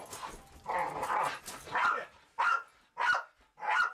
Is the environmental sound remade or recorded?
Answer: recorded